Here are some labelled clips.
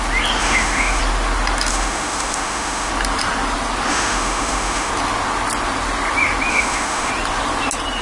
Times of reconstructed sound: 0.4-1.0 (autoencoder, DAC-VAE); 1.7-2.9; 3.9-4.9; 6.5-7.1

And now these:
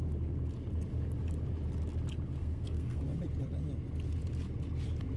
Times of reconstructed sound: 2.4-3.0 (codec, SNAC)

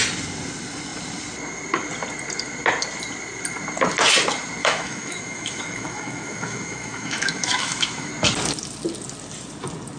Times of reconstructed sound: 4.6-8.1 (autoencoder, DAC-VAE)

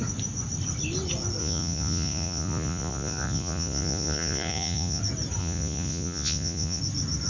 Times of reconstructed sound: 1.4-5.0 (vocoder, Vocos); 5.4-6.8

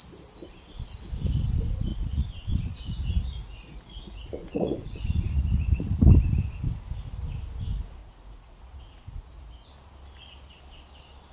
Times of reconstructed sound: 1.9-6.1 (vocoder, Vocos); 8.0-9.7

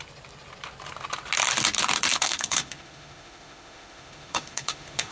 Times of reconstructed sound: 2.1-5.1 (autoencoder, DAC-VAE)

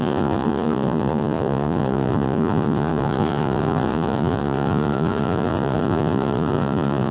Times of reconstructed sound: 0.0-7.1 (vocoder, Vocos)

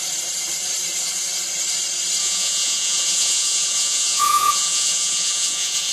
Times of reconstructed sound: 2.2-5.9 (vocoder, Vocos)